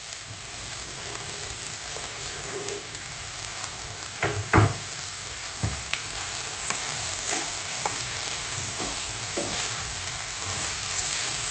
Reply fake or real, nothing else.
fake